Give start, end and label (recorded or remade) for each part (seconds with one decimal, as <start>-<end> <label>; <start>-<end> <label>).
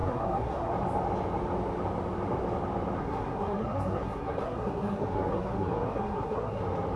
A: 0.0-0.7 remade; 0.7-3.0 recorded; 3.0-6.6 remade; 6.6-7.0 recorded